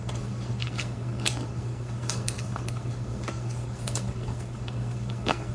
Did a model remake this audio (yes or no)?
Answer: yes